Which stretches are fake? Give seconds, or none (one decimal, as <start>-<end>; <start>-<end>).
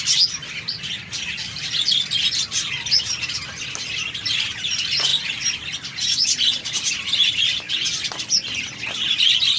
none